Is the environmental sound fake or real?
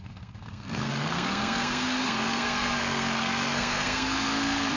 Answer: fake